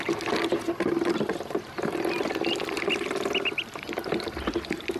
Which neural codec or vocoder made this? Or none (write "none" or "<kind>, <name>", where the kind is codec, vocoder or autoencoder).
none